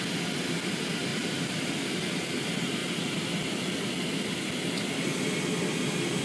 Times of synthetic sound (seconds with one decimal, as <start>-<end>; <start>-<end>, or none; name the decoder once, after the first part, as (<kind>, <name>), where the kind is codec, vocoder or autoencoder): 1.1-1.7 (vocoder, BigVGAN v2); 2.8-3.8